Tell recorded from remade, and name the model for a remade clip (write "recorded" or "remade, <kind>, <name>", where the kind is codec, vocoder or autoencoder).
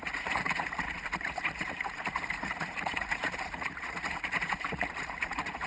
remade, vocoder, Vocos